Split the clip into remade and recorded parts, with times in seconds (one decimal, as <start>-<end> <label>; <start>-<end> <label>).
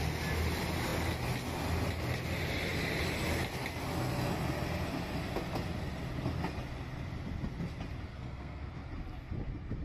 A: 0.0-8.1 recorded; 8.1-8.7 remade; 8.7-9.8 recorded